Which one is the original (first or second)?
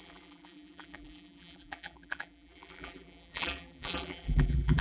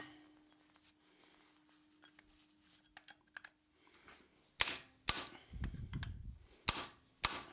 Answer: second